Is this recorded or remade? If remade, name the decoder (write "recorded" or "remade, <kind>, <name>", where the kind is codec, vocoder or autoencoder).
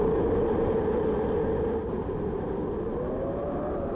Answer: recorded